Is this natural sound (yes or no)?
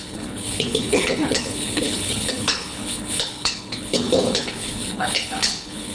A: no